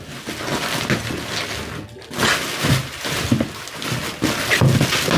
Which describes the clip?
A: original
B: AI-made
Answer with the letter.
A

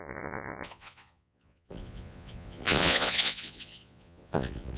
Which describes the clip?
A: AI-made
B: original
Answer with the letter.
A